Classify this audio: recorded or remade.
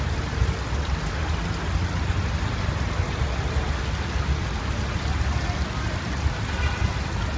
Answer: recorded